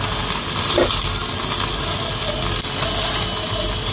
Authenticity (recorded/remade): recorded